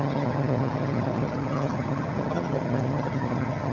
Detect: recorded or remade remade